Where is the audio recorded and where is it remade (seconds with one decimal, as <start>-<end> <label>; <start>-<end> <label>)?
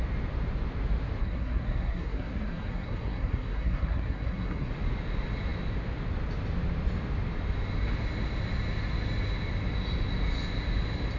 0.0-1.2 recorded; 1.2-4.7 remade; 4.7-11.2 recorded